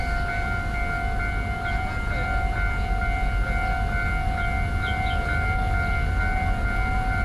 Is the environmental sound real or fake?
real